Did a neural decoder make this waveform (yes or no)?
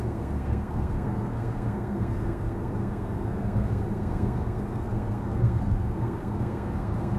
yes